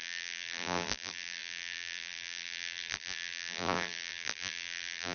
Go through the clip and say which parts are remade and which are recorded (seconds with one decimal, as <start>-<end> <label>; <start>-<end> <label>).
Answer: 0.0-5.1 remade